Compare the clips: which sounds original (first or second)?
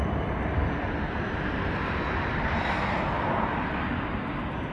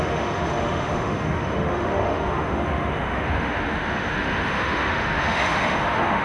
first